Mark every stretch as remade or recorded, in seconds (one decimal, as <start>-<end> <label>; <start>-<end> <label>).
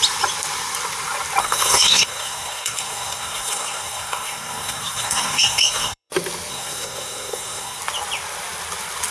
0.0-1.4 recorded; 1.4-6.1 remade; 6.1-6.5 recorded; 6.5-7.8 remade; 7.8-9.1 recorded